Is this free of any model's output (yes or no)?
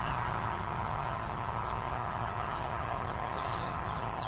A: no